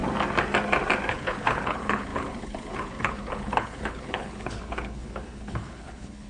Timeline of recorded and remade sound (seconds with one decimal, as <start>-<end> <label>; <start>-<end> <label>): 0.0-1.1 recorded; 1.1-6.3 remade